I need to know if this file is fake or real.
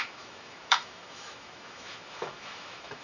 fake